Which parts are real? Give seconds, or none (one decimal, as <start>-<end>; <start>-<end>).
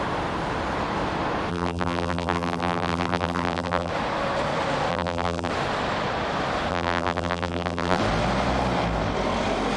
0.0-1.5; 3.9-4.9; 5.5-6.7; 8.0-9.8